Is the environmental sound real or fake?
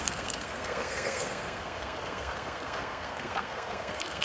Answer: fake